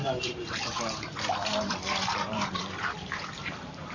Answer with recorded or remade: remade